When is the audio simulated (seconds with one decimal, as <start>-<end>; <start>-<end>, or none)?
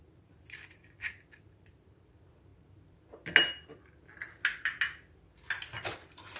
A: none